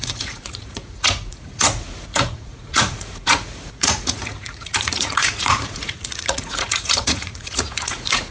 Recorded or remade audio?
remade